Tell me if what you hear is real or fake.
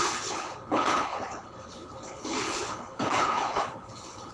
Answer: fake